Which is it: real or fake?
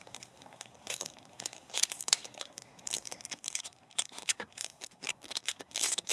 fake